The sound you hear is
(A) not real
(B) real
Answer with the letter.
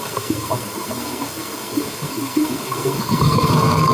A